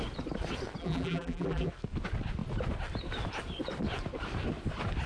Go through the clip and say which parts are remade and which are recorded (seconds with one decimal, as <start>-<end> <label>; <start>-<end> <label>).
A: 0.0-0.8 recorded; 0.8-1.7 remade; 1.7-5.1 recorded

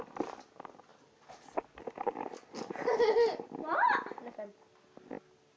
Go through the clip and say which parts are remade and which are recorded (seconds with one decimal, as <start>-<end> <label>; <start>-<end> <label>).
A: 0.0-5.6 recorded

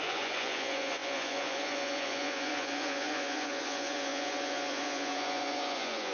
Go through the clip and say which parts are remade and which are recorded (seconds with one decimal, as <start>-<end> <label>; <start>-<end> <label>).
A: 0.0-6.1 remade

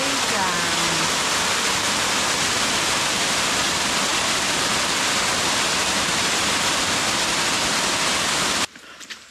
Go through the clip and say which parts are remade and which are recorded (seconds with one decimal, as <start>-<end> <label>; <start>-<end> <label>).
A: 0.0-9.3 recorded

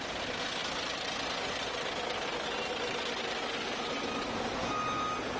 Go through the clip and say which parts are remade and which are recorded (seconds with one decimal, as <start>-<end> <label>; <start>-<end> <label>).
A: 0.0-5.4 recorded